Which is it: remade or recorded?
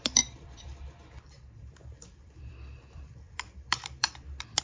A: remade